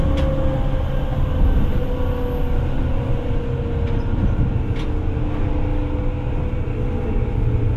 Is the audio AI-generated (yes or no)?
no